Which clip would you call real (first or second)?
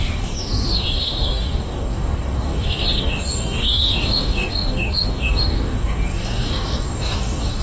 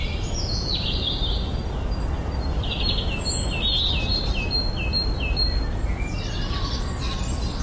second